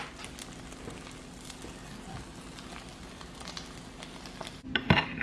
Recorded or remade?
recorded